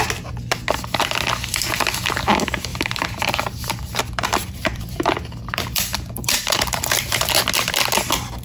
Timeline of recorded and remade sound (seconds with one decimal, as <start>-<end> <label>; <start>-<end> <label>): 0.0-2.7 recorded; 2.7-7.3 remade; 7.3-8.4 recorded